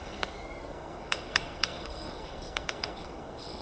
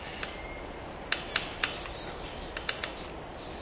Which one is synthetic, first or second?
first